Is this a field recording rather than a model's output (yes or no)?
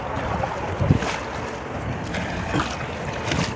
yes